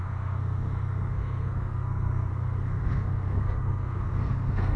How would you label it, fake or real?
fake